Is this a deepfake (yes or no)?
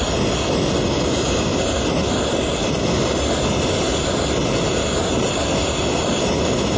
no